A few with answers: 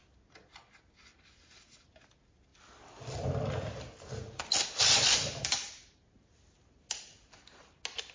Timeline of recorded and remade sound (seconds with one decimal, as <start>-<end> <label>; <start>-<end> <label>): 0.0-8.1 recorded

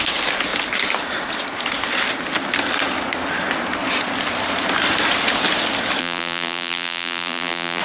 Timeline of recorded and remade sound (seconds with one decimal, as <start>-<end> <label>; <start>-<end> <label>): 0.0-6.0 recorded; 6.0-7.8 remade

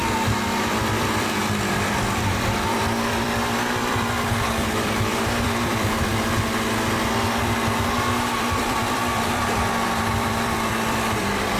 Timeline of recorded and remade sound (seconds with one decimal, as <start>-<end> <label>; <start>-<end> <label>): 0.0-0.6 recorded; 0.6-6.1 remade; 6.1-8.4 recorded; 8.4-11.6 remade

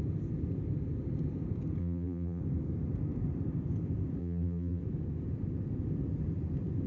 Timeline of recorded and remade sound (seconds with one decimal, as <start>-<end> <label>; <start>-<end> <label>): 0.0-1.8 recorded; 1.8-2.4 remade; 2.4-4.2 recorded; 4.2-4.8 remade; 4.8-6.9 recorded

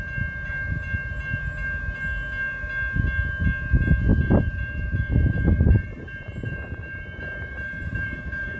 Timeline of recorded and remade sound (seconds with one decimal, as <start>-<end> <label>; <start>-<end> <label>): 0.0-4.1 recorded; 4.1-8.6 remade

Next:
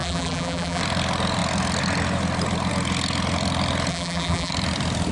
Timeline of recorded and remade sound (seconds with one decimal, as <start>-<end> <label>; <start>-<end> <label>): 0.0-0.8 remade; 0.8-3.9 recorded; 3.9-4.5 remade; 4.5-5.1 recorded

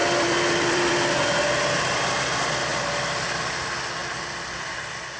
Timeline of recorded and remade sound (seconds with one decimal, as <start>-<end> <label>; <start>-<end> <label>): 0.0-0.9 remade; 0.9-2.7 recorded; 2.7-3.4 remade; 3.4-5.2 recorded

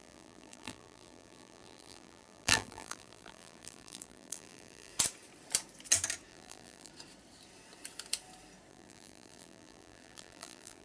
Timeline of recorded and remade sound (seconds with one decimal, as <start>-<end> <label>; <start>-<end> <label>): 0.0-4.9 remade; 4.9-6.3 recorded; 6.3-6.9 remade; 6.9-8.7 recorded; 8.7-10.8 remade